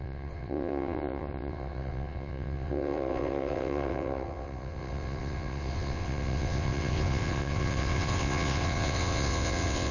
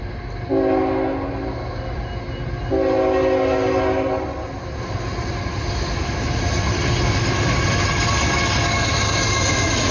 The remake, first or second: first